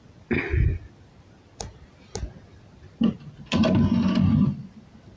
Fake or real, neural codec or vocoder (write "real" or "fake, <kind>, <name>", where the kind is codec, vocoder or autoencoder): real